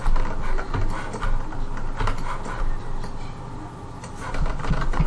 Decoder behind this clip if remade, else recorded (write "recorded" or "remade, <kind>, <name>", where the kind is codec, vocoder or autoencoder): recorded